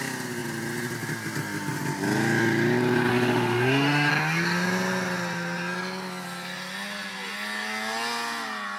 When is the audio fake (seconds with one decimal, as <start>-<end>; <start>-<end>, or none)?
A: 3.1-4.1